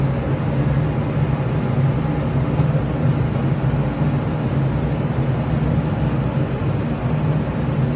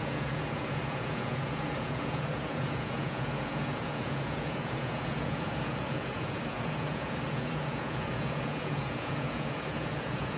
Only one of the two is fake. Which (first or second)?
second